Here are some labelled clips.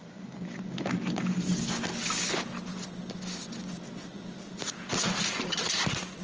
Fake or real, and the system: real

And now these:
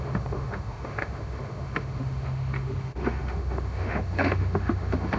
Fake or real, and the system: fake, autoencoder, DAC-VAE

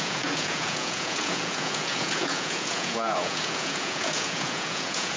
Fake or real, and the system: fake, vocoder, Vocos